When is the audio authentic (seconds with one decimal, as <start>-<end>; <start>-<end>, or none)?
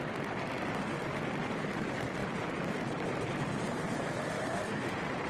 0.0-2.2